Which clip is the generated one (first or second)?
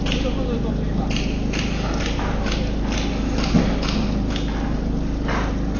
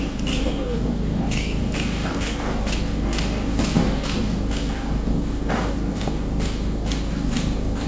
second